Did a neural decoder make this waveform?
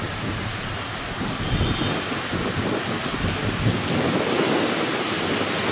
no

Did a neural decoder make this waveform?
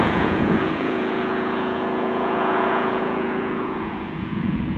yes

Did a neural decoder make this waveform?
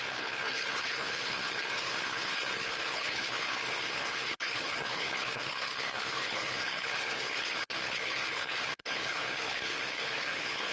yes